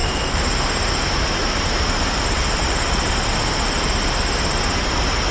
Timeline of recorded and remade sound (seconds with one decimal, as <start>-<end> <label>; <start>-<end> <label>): 0.0-3.1 remade; 3.1-5.3 recorded